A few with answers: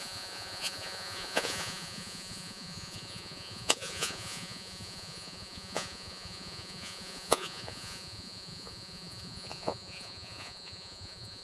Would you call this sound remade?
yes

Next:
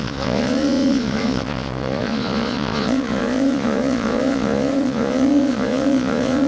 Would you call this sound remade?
yes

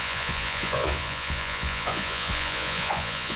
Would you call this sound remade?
yes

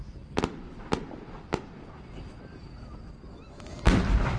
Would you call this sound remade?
no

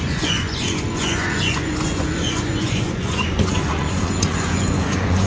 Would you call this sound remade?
yes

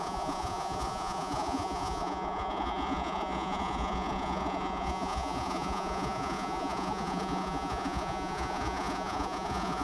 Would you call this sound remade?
yes